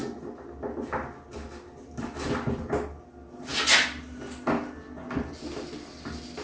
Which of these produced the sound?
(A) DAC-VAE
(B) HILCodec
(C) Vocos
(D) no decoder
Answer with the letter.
D